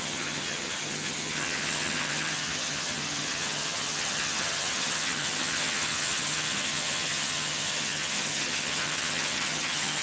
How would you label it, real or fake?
fake